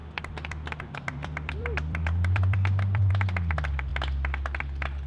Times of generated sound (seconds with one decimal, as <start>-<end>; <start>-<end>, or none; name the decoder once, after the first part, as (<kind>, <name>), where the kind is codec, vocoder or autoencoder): 0.0-3.1 (vocoder, BigVGAN v2)